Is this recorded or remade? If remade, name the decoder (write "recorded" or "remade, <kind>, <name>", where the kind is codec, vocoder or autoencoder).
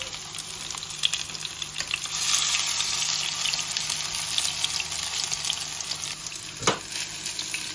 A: recorded